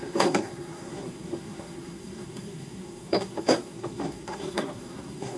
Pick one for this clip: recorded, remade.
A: remade